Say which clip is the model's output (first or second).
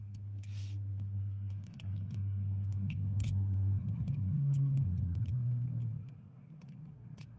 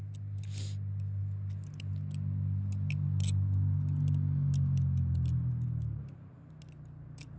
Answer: first